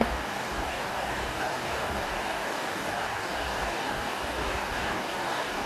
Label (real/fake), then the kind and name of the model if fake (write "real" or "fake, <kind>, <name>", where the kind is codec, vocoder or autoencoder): fake, codec, DAC